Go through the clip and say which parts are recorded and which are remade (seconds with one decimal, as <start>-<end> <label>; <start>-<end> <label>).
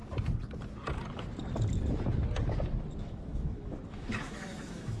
0.0-3.0 recorded; 3.0-5.0 remade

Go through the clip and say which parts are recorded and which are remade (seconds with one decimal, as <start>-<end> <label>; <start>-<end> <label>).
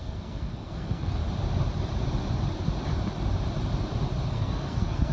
0.0-1.2 remade; 1.2-4.3 recorded; 4.3-5.1 remade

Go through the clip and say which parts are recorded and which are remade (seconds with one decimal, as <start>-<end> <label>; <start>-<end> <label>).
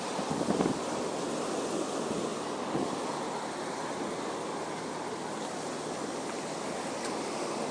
0.0-7.7 recorded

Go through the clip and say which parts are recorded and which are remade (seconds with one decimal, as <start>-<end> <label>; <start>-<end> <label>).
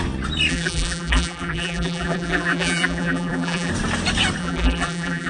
0.0-0.5 recorded; 0.5-3.7 remade; 3.7-4.4 recorded; 4.4-5.3 remade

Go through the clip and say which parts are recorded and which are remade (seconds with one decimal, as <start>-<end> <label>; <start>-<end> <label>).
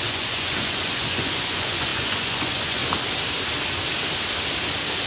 0.0-2.8 remade; 2.8-5.1 recorded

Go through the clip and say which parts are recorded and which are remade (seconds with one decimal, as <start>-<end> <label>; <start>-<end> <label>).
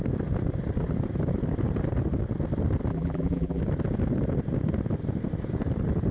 0.0-2.9 recorded; 2.9-3.6 remade; 3.6-6.1 recorded